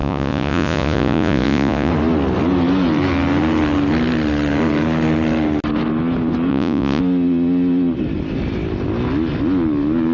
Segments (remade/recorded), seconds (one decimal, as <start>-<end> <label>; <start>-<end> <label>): 0.0-1.9 remade; 1.9-6.5 recorded; 6.5-7.0 remade; 7.0-10.1 recorded